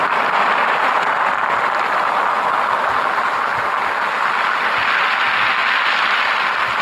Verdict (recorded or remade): recorded